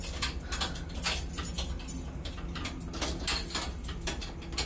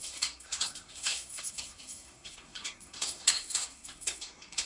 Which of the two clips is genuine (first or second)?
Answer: first